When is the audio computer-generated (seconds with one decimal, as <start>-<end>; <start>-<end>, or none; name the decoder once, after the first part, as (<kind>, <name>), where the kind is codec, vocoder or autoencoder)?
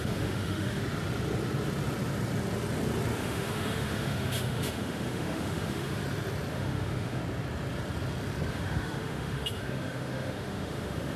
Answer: 0.0-0.8 (autoencoder, DAC-VAE); 3.2-6.0; 6.5-7.2; 8.5-11.2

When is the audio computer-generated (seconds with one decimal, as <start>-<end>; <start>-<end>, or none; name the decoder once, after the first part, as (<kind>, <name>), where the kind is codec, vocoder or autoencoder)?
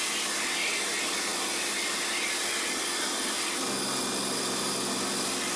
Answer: none